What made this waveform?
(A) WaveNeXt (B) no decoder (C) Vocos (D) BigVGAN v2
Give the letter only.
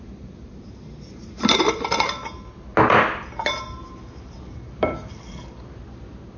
B